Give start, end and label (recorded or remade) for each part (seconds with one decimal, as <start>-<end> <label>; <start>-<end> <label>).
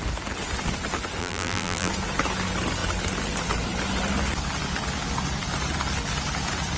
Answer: 0.0-1.2 recorded; 1.2-1.9 remade; 1.9-6.8 recorded